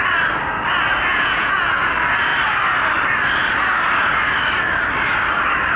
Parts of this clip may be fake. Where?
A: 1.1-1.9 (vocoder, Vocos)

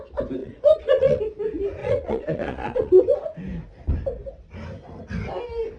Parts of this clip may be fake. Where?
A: 0.4-1.2 (vocoder, Vocos); 1.8-3.0

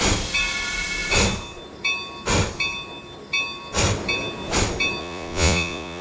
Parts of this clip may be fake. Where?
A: 5.0-6.0 (vocoder, Vocos)

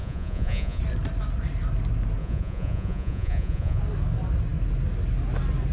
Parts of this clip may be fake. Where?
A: 0.0-0.8 (vocoder, Vocos); 2.2-3.8

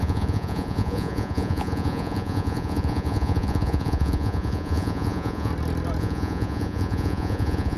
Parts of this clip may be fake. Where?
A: 0.0-5.5 (vocoder, Vocos); 6.0-7.8